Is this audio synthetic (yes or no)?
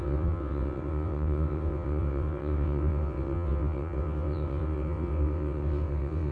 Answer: yes